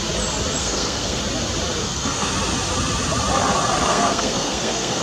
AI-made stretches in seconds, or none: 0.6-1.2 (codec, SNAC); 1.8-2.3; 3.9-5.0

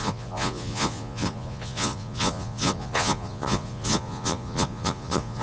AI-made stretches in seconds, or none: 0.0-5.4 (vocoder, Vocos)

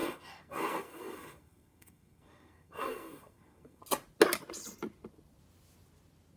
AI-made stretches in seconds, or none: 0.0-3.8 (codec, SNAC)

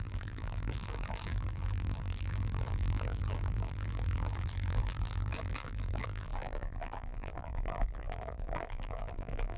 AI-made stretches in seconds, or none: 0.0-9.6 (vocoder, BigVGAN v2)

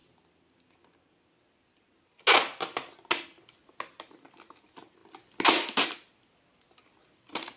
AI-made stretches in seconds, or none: none

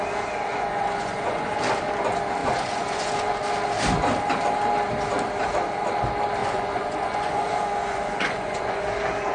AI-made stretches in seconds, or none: 0.5-1.5 (vocoder, Vocos); 2.4-3.4; 6.4-8.8

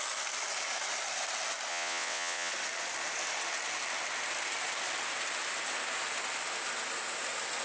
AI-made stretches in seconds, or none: 1.7-2.5 (vocoder, WaveNeXt)